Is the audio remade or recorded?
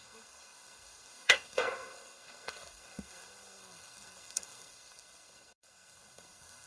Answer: remade